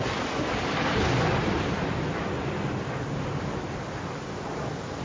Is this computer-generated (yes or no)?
no